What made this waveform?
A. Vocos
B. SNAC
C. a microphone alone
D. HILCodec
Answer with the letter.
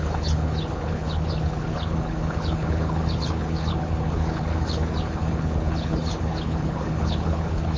D